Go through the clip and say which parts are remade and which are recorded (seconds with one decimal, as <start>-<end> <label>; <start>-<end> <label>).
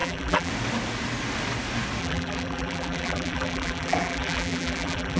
0.0-0.5 remade; 0.5-2.0 recorded; 2.0-5.2 remade